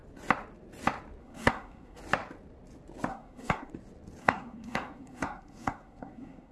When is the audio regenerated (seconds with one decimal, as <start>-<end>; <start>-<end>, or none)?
1.2-2.0; 3.1-3.7; 4.2-6.5